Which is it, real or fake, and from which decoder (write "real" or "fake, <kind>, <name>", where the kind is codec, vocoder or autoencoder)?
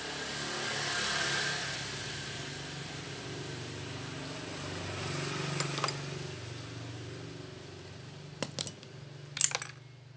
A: real